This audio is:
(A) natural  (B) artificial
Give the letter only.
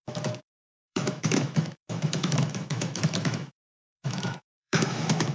B